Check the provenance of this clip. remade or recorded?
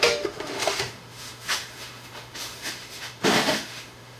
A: remade